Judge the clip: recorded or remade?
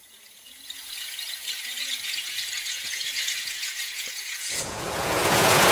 remade